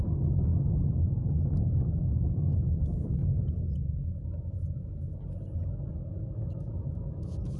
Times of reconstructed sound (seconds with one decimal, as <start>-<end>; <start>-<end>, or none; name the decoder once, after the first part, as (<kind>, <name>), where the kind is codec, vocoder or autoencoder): 0.0-0.5 (autoencoder, DAC-VAE); 1.4-3.2; 6.2-7.6